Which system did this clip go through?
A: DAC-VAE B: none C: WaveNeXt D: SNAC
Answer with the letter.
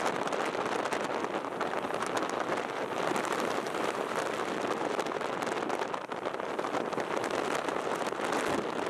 B